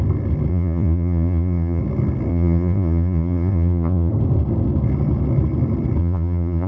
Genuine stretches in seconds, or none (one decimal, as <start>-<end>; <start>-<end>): 0.0-0.5; 1.8-2.3; 4.1-6.0